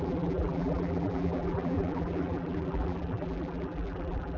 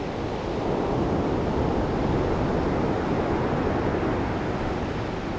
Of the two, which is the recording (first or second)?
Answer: second